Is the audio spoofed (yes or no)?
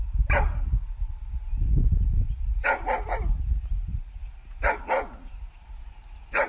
no